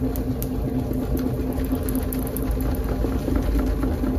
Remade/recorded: recorded